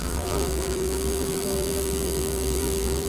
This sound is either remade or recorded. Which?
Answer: remade